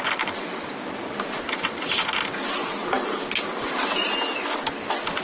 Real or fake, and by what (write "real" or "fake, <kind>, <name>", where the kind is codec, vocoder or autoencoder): real